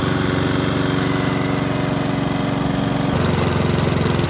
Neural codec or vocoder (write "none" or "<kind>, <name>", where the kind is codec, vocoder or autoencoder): none